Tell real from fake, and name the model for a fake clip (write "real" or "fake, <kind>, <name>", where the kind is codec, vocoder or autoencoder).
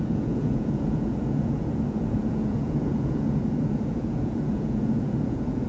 fake, vocoder, Vocos